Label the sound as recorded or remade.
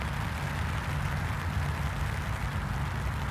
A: recorded